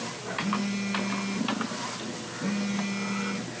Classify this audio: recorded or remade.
recorded